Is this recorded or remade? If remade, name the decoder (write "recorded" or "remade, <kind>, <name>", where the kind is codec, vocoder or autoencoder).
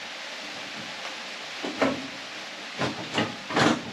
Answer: recorded